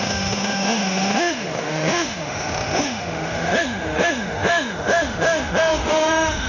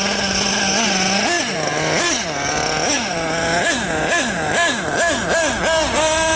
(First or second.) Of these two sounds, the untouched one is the second